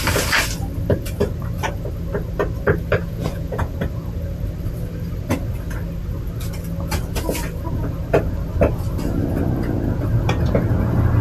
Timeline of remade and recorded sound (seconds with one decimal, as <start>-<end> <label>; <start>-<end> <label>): 0.0-3.0 recorded; 3.0-3.7 remade; 3.7-11.2 recorded